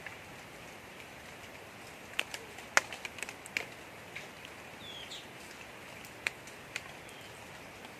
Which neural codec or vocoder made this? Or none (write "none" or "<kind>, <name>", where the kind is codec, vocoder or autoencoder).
none